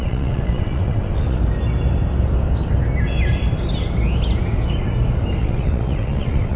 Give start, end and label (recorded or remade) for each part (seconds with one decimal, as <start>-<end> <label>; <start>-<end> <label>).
0.0-1.4 remade; 1.4-5.4 recorded; 5.4-6.6 remade